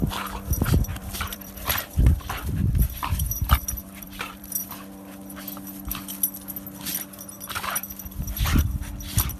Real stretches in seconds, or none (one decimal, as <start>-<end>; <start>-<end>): 0.0-0.9; 4.7-6.9; 8.7-9.4